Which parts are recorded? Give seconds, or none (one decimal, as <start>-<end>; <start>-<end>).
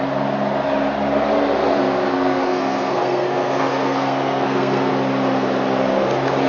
0.0-2.1; 4.9-6.5